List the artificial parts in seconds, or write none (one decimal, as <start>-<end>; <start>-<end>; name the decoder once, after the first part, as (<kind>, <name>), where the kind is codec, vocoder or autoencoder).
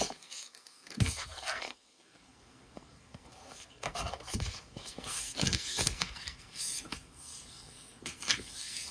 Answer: 0.0-8.9 (codec, SNAC)